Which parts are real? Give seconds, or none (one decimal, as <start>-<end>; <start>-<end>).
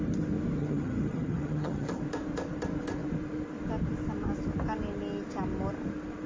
0.0-0.6; 2.0-6.3